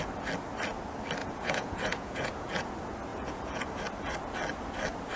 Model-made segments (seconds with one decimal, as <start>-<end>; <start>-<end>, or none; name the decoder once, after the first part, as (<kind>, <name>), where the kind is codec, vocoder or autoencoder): 1.2-2.7 (vocoder, Vocos); 3.1-3.7